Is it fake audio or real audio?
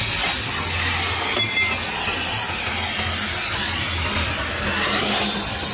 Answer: real